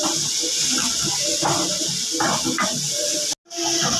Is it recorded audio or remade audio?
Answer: recorded